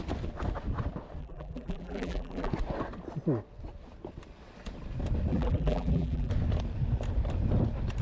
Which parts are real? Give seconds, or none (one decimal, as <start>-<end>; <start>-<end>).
0.0-1.2; 2.5-5.3; 6.3-8.0